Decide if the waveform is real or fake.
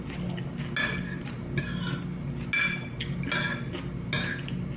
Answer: real